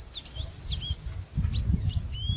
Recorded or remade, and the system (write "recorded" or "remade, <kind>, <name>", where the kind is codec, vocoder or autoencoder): recorded